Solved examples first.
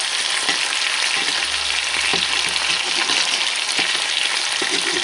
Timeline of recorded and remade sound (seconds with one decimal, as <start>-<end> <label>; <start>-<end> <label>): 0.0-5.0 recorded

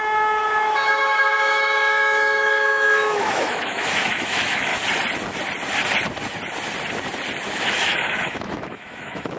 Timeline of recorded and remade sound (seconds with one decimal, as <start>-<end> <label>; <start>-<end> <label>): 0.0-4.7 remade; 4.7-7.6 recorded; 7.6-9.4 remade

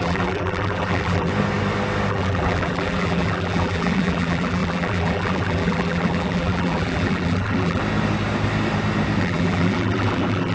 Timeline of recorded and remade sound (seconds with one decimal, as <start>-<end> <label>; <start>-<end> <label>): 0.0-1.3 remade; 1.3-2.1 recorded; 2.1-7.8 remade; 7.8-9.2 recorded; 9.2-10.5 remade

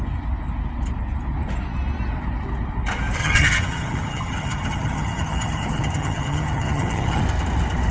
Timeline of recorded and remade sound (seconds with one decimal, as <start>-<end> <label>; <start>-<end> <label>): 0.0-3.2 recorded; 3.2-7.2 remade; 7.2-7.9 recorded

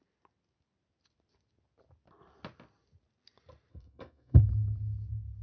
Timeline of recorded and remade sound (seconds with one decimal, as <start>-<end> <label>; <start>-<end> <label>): 0.0-3.7 recorded; 3.7-4.5 remade; 4.5-5.4 recorded